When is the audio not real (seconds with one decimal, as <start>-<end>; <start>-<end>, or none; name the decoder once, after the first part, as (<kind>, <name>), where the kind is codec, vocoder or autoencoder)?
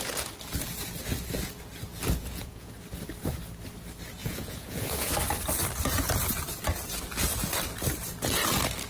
2.2-2.7 (vocoder, Vocos); 4.2-5.1